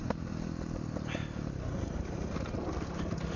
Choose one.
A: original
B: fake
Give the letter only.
A